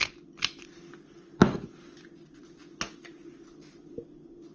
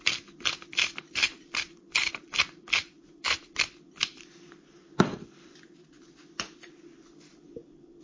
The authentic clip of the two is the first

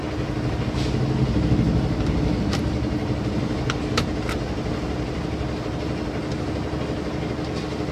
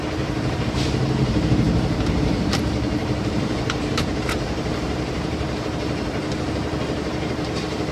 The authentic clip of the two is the first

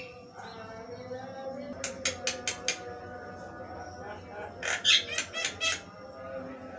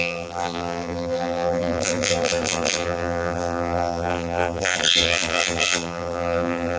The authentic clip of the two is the first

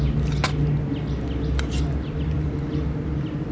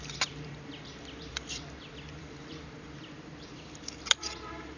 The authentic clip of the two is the first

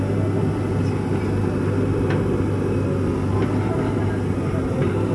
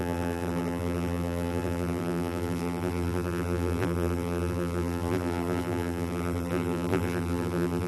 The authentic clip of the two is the first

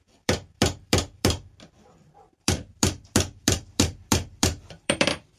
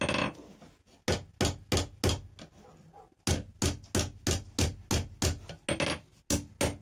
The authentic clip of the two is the second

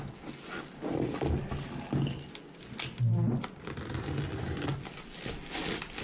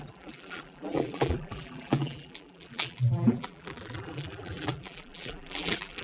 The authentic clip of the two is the first